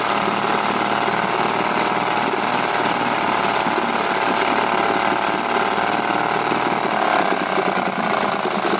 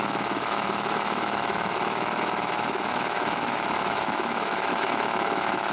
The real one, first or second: first